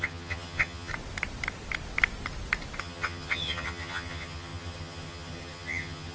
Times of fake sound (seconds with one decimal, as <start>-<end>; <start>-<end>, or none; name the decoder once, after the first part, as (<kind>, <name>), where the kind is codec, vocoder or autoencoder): 0.0-0.9 (vocoder, HiFi-GAN); 2.8-6.1